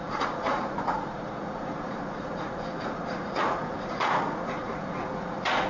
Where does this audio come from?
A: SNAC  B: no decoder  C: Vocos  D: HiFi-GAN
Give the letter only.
C